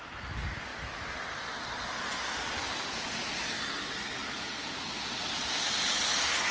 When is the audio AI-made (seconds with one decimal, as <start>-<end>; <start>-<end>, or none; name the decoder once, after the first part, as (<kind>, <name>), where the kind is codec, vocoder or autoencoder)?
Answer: none